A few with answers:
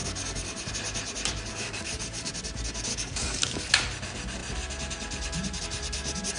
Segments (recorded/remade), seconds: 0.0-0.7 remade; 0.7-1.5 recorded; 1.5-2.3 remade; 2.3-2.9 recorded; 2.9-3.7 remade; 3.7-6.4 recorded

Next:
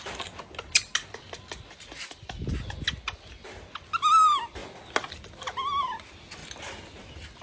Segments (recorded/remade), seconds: 0.0-7.4 recorded

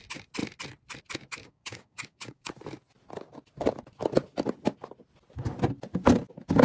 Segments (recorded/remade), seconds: 0.0-1.4 recorded; 1.4-2.5 remade; 2.5-6.6 recorded

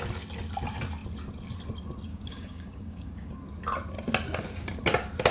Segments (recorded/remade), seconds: 0.0-2.1 recorded; 2.1-3.3 remade; 3.3-5.3 recorded